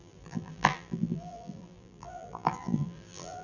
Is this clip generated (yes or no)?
yes